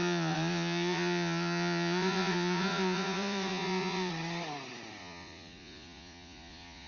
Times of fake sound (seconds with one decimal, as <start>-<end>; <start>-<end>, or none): 0.0-4.1; 5.0-6.9